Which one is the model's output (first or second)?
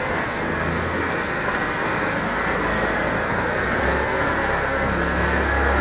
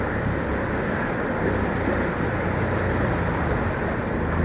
first